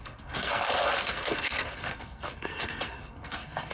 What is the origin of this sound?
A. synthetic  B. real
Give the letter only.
A